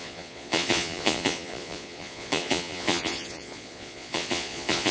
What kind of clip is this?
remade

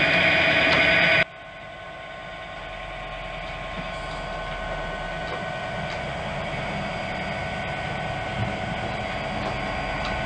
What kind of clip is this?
recorded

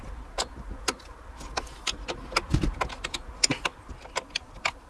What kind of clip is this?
recorded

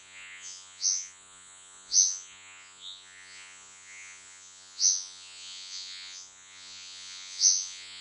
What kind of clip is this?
remade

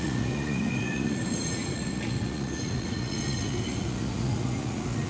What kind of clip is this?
remade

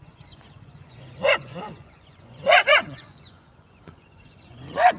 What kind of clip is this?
remade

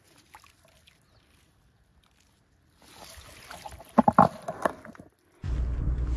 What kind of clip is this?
recorded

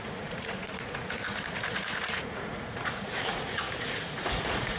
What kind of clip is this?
remade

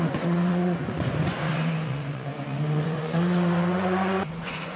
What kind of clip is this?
remade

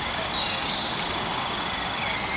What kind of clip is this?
recorded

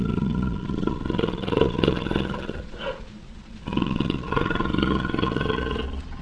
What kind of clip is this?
remade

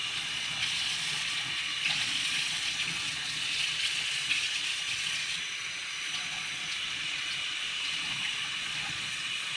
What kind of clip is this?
remade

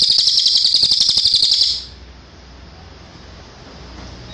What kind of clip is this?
recorded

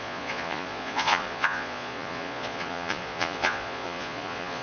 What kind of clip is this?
remade